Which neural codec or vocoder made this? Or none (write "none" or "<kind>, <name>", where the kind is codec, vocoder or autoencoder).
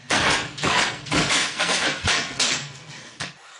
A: codec, SNAC